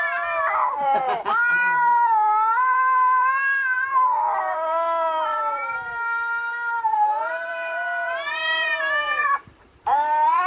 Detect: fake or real fake